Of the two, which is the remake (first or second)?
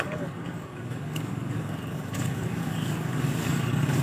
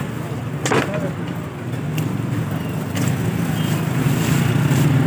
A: first